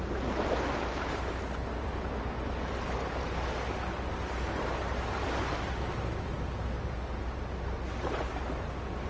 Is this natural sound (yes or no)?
yes